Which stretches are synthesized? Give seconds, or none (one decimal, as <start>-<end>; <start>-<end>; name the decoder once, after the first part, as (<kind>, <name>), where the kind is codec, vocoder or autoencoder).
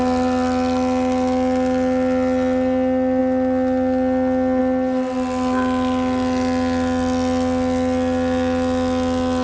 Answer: none